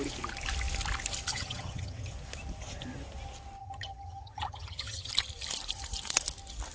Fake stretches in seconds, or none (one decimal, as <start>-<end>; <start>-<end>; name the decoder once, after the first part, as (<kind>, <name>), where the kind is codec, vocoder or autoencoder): 1.3-2.1 (vocoder, HiFi-GAN); 3.6-5.1

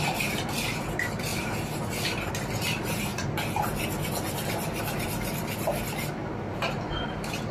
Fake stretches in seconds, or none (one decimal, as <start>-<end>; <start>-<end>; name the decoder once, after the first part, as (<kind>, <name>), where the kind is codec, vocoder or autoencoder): none

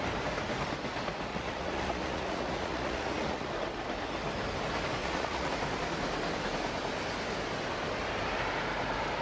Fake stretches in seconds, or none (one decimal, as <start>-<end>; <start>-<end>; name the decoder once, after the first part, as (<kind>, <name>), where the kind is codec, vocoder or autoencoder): 1.3-3.5 (vocoder, Vocos); 5.0-5.5